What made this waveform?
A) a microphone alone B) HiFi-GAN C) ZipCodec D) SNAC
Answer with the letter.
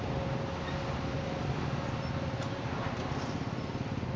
A